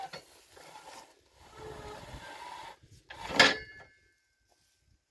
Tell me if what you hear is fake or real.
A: real